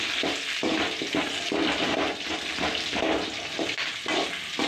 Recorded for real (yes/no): no